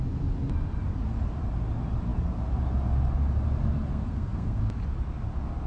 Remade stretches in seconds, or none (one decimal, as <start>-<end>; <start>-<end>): 3.9-4.6